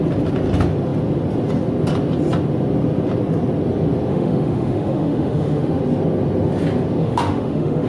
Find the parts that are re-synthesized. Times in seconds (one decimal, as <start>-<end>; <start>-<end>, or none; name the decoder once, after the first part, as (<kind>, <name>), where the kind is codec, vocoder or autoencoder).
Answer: 4.1-5.8 (autoencoder, DAC-VAE); 7.0-7.9